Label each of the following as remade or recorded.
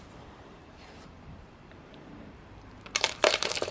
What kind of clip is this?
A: remade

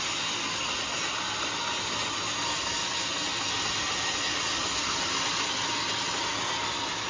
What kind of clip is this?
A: recorded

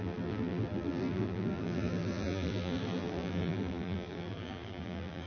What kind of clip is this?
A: remade